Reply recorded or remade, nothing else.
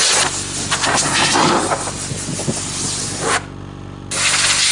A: recorded